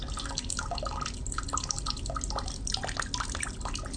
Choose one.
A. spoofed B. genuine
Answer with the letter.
B